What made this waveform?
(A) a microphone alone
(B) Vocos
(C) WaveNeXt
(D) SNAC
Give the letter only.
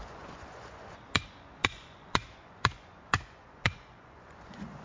B